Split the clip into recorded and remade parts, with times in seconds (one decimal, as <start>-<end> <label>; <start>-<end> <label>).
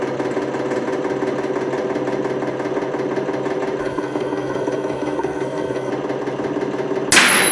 0.0-3.8 recorded; 3.8-5.9 remade; 5.9-7.5 recorded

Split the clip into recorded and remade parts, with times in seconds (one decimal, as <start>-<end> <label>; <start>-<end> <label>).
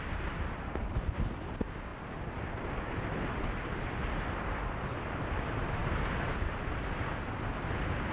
0.0-8.1 recorded